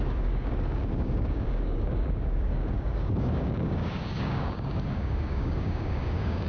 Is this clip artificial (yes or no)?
yes